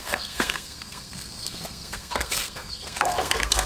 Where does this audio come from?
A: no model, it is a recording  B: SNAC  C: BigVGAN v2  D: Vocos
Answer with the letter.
B